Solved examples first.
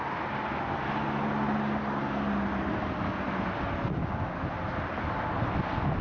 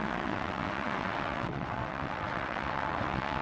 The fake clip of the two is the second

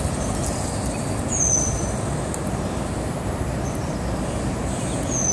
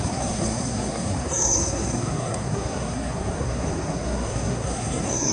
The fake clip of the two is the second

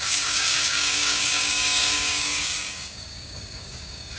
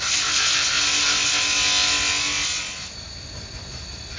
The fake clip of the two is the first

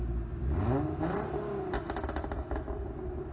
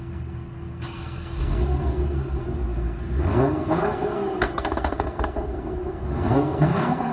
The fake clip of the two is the second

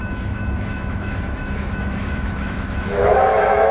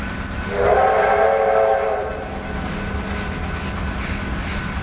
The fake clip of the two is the first